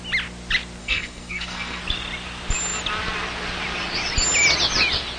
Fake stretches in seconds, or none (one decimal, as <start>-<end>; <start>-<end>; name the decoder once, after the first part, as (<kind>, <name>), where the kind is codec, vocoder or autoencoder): 0.8-1.8 (codec, SNAC)